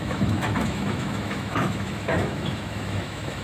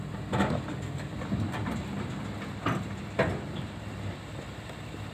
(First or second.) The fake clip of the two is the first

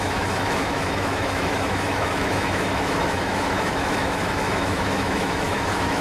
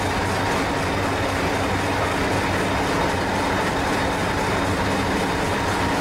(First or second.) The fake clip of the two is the first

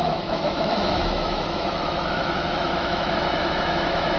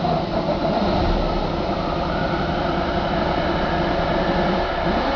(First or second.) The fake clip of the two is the first